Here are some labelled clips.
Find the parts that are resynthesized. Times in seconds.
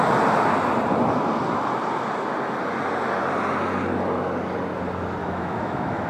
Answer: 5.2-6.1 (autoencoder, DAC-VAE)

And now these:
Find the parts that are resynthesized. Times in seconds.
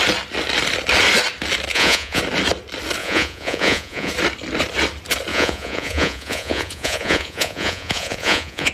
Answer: 1.7-2.2 (vocoder, Vocos); 3.0-4.1; 5.3-8.7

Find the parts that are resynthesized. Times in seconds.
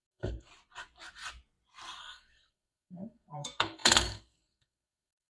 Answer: 0.0-0.5 (codec, SNAC); 2.0-5.4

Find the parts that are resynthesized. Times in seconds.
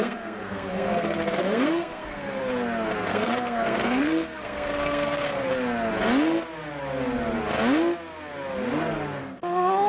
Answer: 0.0-2.4 (codec, SNAC); 3.1-5.5; 9.2-9.9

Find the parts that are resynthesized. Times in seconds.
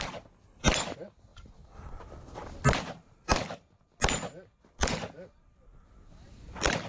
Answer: none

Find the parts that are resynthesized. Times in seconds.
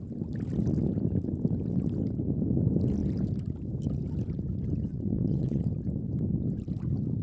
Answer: 4.9-5.6 (vocoder, WaveNeXt)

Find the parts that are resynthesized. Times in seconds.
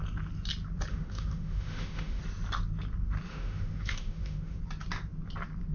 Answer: 0.9-2.2 (autoencoder, DAC-VAE); 3.3-4.6